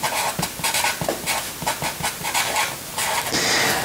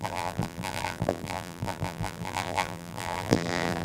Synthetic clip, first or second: second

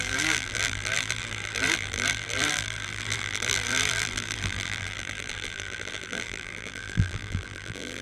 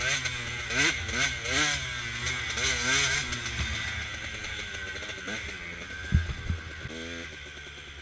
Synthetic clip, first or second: first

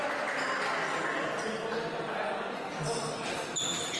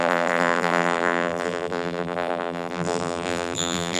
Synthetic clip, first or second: second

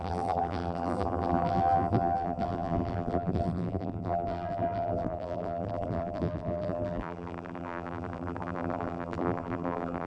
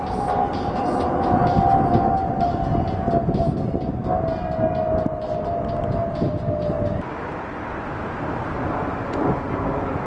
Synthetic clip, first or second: first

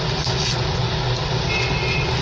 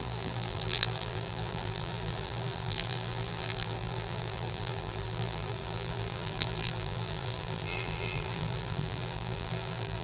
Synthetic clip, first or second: second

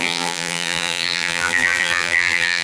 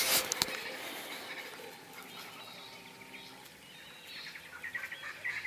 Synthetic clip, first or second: first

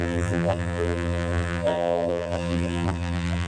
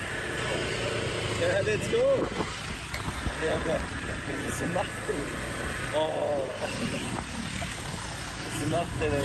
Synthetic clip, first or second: first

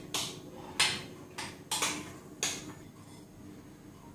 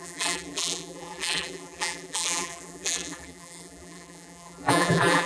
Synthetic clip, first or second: second